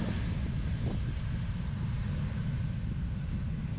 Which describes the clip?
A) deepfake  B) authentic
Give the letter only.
B